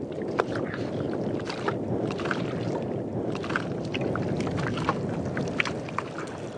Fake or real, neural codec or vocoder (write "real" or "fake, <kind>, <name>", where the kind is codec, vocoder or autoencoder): real